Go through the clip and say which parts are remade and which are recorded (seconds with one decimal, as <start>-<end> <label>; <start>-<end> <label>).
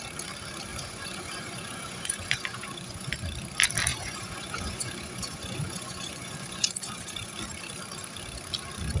0.0-0.7 recorded; 0.7-3.1 remade; 3.1-3.9 recorded; 3.9-7.3 remade; 7.3-9.0 recorded